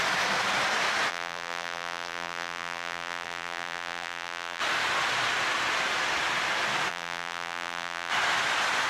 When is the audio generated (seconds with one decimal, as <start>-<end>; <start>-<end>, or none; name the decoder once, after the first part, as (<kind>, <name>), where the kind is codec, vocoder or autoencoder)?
1.1-4.6 (vocoder, BigVGAN v2); 6.9-8.1